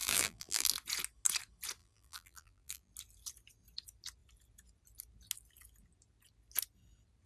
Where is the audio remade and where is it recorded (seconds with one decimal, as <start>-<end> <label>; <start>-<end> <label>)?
0.0-0.7 remade; 0.7-1.8 recorded; 1.8-2.9 remade; 2.9-7.3 recorded